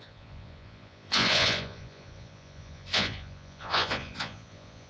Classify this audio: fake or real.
fake